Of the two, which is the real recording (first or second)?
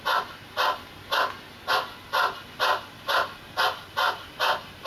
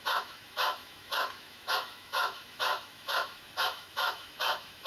first